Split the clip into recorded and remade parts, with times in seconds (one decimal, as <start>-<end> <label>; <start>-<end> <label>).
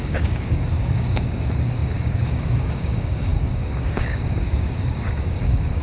0.0-5.8 remade